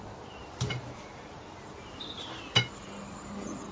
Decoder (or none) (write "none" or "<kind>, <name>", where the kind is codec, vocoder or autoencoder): none